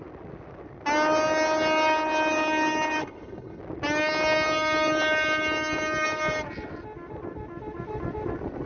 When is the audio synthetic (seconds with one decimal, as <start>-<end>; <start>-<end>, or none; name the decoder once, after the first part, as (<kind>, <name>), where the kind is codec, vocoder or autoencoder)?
3.0-3.6 (codec, HILCodec)